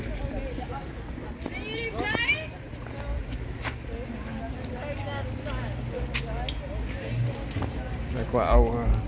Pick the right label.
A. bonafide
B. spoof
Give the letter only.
A